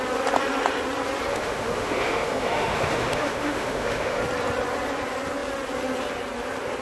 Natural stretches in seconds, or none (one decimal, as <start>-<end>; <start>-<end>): 0.0-1.3; 4.2-6.8

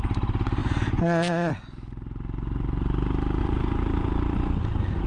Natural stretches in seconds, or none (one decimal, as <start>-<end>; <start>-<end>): 0.0-0.6; 1.5-3.4; 4.1-5.1

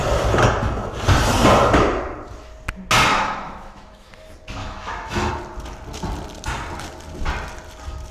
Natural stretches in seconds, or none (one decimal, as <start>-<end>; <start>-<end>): 0.0-3.1; 4.1-4.6; 5.3-8.1

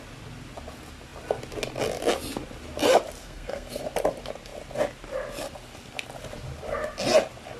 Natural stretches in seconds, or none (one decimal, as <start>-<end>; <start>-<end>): 0.0-3.2; 3.8-7.6

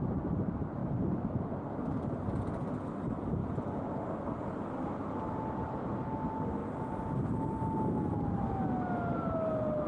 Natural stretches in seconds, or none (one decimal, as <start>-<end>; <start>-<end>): 0.0-9.9

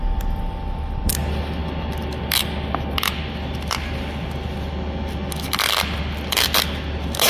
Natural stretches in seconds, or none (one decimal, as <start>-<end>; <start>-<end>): 0.0-7.3

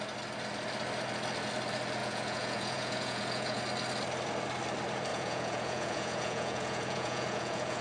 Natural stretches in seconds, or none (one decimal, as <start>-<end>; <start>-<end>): 0.0-2.0; 3.6-5.1

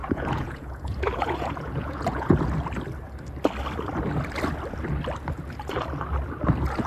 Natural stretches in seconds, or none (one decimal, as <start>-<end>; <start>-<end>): 2.4-6.9